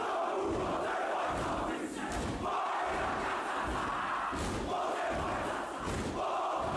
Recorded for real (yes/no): yes